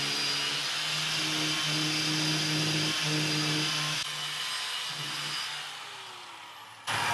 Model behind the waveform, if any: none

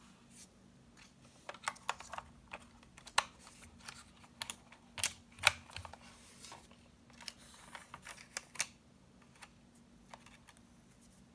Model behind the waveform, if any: none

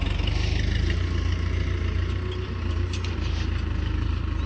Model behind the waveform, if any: none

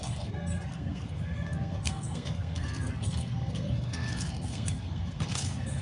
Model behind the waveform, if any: codec, SNAC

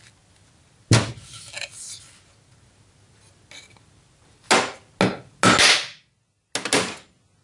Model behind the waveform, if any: none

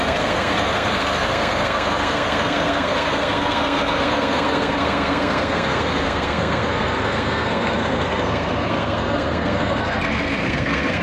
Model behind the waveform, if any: codec, SNAC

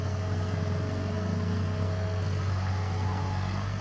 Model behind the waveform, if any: codec, SNAC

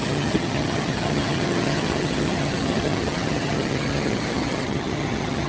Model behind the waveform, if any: vocoder, HiFi-GAN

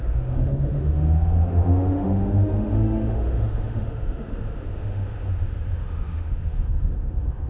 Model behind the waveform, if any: autoencoder, DAC-VAE